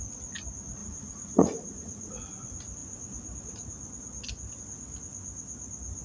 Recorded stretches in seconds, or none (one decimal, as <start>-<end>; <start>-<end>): 0.0-0.8; 2.2-6.0